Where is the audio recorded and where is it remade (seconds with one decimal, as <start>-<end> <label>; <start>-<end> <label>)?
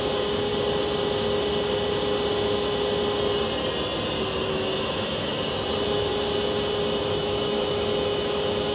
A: 0.0-0.5 remade; 0.5-4.5 recorded; 4.5-6.1 remade; 6.1-7.0 recorded; 7.0-8.7 remade